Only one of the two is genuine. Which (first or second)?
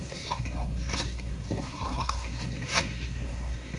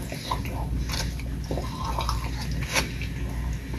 second